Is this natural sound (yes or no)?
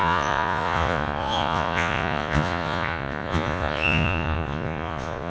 no